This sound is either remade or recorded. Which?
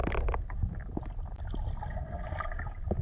recorded